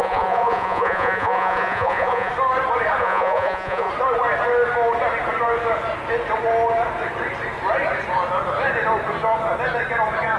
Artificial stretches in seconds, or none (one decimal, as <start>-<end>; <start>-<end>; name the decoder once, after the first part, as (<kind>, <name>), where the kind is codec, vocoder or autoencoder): 0.0-2.3 (vocoder, Vocos); 3.0-3.9